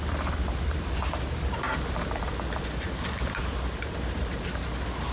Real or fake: real